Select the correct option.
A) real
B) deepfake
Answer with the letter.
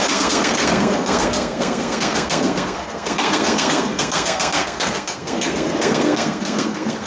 B